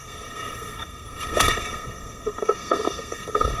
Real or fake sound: fake